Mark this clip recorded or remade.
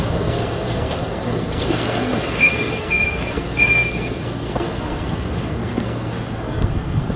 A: remade